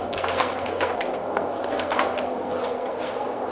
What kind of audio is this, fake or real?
fake